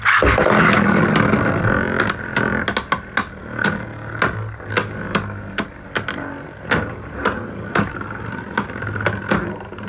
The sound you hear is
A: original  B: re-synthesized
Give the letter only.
A